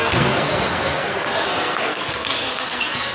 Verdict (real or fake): fake